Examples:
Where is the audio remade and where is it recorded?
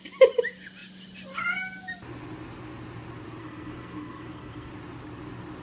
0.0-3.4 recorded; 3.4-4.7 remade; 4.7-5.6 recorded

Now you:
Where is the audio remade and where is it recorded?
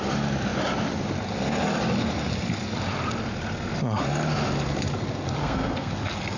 0.0-5.4 recorded; 5.4-5.9 remade; 5.9-6.4 recorded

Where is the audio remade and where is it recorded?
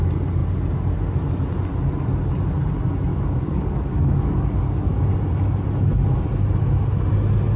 0.0-3.1 recorded; 3.1-5.0 remade; 5.0-7.6 recorded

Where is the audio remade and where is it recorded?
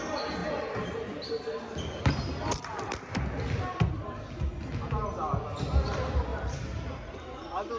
0.0-0.4 recorded; 0.4-1.3 remade; 1.3-6.3 recorded; 6.3-7.8 remade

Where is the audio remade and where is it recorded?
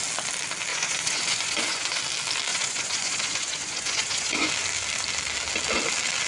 0.0-0.7 recorded; 0.7-2.0 remade; 2.0-2.5 recorded; 2.5-4.5 remade; 4.5-6.3 recorded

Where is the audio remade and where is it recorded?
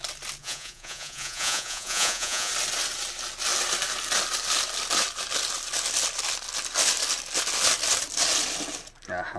0.0-0.4 recorded; 0.4-2.5 remade; 2.5-9.4 recorded